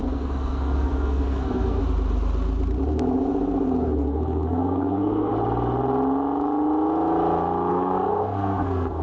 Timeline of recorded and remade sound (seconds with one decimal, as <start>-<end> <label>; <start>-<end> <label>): 0.0-1.8 remade; 1.8-3.8 recorded; 3.8-5.3 remade; 5.3-7.7 recorded; 7.7-9.0 remade